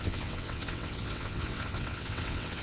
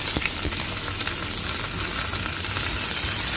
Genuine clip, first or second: second